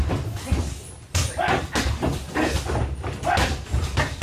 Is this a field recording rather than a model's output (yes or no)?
yes